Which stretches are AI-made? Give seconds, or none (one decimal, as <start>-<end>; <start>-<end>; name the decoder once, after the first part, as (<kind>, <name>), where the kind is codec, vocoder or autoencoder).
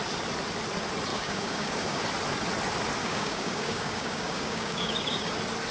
1.1-2.0 (codec, DAC); 3.0-5.3